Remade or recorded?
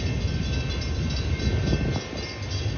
recorded